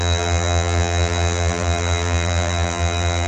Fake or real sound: fake